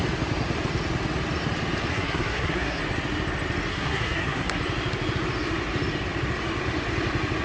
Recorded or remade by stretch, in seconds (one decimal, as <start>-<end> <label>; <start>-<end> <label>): 0.0-1.9 recorded; 1.9-2.8 remade; 2.8-3.7 recorded; 3.7-4.6 remade; 4.6-7.4 recorded